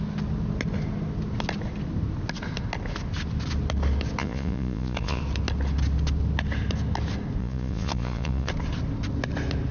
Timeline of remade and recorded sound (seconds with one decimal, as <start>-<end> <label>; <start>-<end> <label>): 0.0-4.2 recorded; 4.2-5.2 remade; 5.2-7.4 recorded; 7.4-8.5 remade; 8.5-9.7 recorded